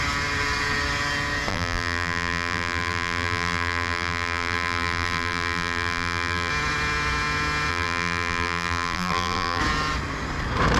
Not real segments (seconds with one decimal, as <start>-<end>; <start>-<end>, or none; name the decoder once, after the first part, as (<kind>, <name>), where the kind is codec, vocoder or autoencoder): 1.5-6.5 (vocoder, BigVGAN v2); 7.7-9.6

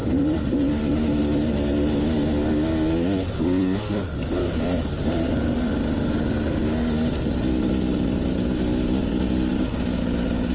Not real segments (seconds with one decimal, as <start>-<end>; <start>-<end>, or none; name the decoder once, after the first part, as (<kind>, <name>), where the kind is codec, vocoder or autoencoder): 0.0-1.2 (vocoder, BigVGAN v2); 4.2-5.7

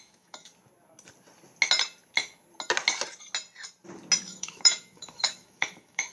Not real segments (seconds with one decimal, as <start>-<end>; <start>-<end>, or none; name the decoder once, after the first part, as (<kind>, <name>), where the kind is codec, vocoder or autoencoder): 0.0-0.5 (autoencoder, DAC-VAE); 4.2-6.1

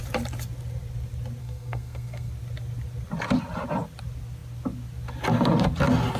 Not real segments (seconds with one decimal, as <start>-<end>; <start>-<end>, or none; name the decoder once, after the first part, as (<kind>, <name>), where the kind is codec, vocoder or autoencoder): 1.4-2.3 (codec, SNAC)

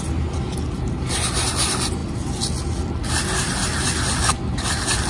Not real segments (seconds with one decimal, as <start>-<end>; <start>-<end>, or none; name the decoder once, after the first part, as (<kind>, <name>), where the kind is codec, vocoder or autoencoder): none